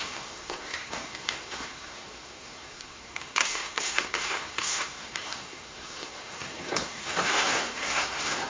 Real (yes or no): no